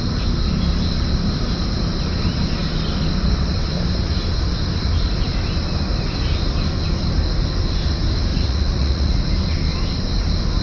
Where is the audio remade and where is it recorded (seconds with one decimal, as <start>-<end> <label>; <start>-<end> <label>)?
0.0-8.3 recorded; 8.3-9.3 remade; 9.3-10.6 recorded